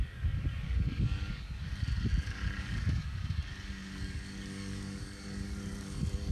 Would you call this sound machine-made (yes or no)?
yes